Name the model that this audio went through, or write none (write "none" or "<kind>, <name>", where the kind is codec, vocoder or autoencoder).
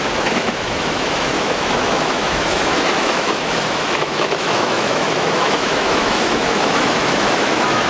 autoencoder, DAC-VAE